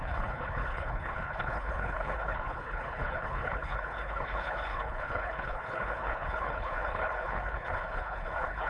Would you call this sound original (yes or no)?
no